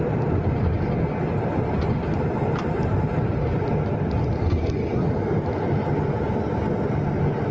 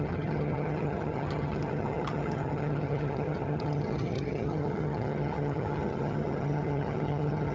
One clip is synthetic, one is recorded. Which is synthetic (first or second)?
second